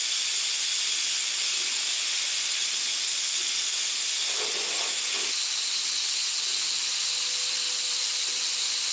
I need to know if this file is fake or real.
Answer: real